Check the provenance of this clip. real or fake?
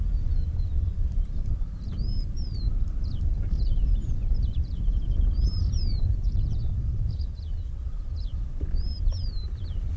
fake